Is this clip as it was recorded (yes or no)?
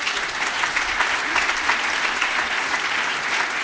yes